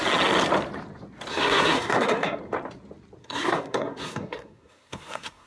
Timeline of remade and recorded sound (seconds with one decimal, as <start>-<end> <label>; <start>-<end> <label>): 0.0-1.3 recorded; 1.3-2.4 remade; 2.4-3.2 recorded; 3.2-5.5 remade